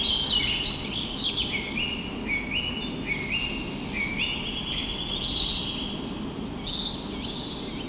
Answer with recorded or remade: recorded